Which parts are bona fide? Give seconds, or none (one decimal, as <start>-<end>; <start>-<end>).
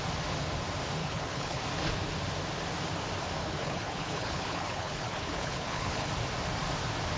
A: 0.0-1.0; 1.6-3.4; 6.1-7.2